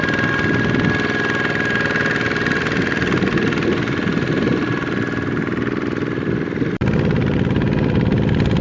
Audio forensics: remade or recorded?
recorded